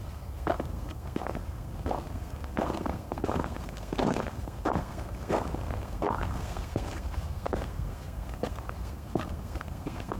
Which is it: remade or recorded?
remade